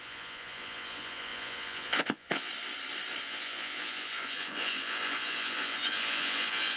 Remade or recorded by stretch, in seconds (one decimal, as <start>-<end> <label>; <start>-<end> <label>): 0.0-2.5 remade; 2.5-3.2 recorded; 3.2-6.8 remade